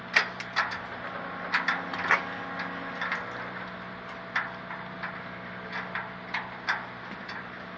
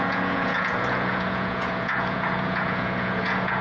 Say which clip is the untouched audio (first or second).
first